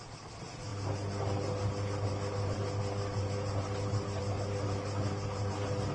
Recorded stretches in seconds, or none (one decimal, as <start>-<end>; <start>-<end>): 0.0-5.9